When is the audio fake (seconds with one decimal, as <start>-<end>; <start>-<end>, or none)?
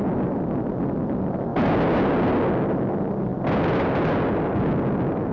none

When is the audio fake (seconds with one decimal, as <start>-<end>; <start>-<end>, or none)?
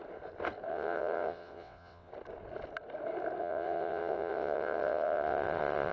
0.7-2.1; 3.4-5.9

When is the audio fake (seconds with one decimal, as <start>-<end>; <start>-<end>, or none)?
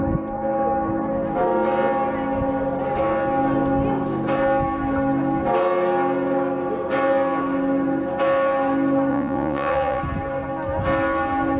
9.1-10.0